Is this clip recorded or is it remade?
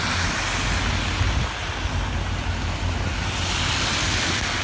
recorded